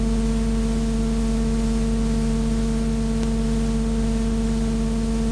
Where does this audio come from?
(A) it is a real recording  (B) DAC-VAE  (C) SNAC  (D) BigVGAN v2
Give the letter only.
A